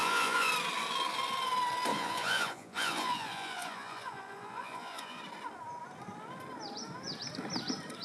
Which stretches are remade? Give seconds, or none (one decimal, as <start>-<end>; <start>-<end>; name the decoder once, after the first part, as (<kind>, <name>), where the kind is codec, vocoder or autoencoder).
0.0-0.5 (vocoder, Vocos); 1.9-5.2